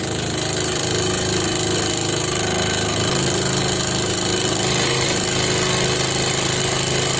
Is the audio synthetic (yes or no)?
no